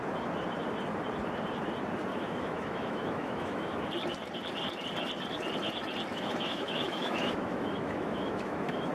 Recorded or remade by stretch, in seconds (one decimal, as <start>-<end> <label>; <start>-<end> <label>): 0.0-2.1 recorded; 2.1-3.9 remade; 3.9-6.1 recorded; 6.1-8.9 remade